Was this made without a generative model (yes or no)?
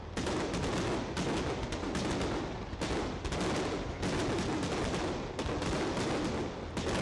yes